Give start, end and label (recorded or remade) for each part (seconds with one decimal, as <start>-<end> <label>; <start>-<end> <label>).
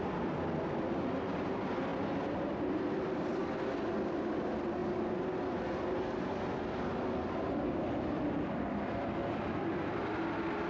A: 0.0-3.3 remade; 3.3-4.2 recorded; 4.2-4.8 remade; 4.8-7.8 recorded; 7.8-10.7 remade